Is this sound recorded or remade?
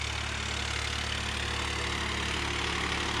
recorded